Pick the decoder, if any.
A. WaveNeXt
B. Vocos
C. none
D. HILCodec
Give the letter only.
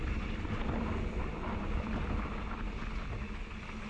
C